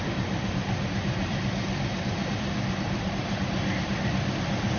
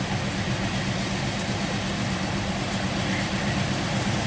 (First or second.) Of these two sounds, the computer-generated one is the first